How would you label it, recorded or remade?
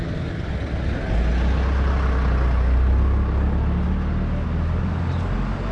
recorded